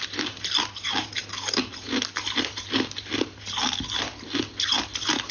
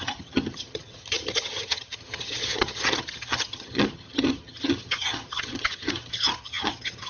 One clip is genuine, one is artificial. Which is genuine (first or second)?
first